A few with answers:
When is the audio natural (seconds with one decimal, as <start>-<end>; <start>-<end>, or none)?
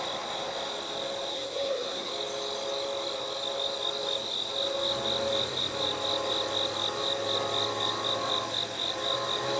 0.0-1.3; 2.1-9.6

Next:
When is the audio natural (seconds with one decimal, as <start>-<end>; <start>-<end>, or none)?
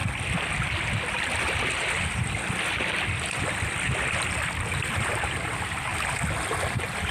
0.0-4.3; 5.9-6.6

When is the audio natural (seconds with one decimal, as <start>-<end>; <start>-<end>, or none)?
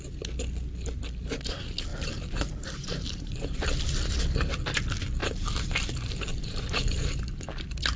0.0-1.9; 4.2-5.2; 7.3-8.0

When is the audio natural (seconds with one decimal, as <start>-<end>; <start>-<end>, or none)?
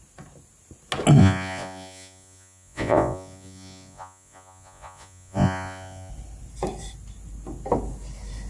0.0-1.2; 6.1-8.5